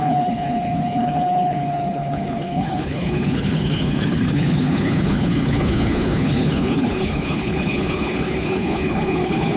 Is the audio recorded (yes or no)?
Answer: no